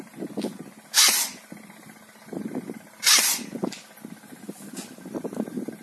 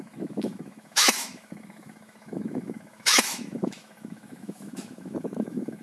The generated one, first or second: second